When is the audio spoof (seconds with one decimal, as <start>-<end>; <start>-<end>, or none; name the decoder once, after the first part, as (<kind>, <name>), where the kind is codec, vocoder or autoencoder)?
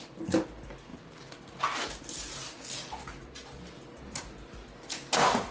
none